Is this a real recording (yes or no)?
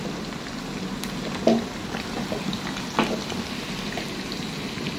yes